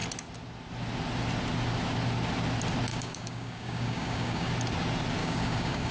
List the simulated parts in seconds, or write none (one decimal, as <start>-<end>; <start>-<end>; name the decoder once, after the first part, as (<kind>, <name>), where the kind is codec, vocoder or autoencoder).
2.9-4.5 (codec, DAC); 5.2-5.9